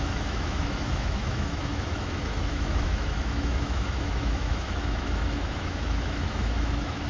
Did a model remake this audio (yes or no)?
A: yes